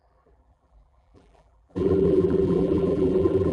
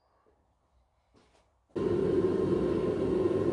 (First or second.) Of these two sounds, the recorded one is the second